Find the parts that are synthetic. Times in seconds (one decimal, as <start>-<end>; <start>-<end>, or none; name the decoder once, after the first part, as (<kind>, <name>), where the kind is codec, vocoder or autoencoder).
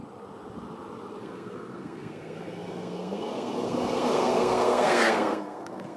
1.2-6.0 (codec, SNAC)